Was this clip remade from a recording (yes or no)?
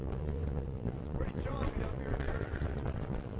yes